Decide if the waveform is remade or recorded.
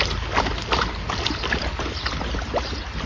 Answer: recorded